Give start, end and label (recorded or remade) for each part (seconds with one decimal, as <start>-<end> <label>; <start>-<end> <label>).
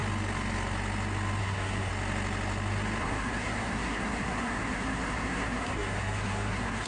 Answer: 0.0-1.4 recorded; 1.4-1.9 remade; 1.9-3.0 recorded; 3.0-6.9 remade